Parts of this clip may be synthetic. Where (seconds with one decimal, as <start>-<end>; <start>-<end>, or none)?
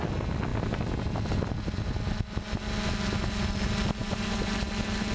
4.0-4.6